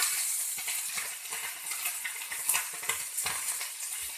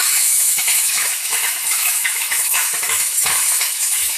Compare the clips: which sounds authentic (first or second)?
first